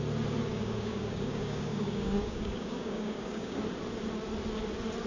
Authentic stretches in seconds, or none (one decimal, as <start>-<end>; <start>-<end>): 0.0-0.5; 3.6-5.1